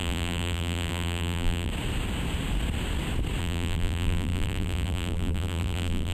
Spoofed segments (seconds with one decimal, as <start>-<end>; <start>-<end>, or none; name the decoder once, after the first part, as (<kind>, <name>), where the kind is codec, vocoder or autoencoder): 0.0-1.7 (vocoder, BigVGAN v2); 3.4-6.1